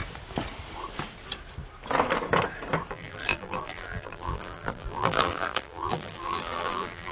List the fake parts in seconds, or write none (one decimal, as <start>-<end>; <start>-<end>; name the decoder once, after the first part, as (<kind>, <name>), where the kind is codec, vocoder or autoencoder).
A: 2.9-7.1 (vocoder, BigVGAN v2)